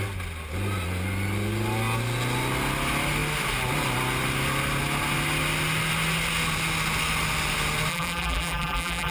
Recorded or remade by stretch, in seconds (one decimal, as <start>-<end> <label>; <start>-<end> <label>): 0.0-7.9 recorded; 7.9-9.1 remade

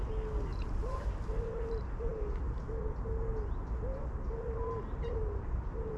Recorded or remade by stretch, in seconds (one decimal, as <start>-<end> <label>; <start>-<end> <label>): 0.0-0.5 recorded; 0.5-1.1 remade; 1.1-6.0 recorded